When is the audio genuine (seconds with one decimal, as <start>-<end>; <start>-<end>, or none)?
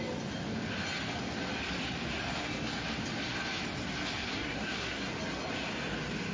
0.0-4.3; 5.1-6.3